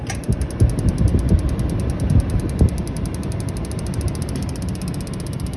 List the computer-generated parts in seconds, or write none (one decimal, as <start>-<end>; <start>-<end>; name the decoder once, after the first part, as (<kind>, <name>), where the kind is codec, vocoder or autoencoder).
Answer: none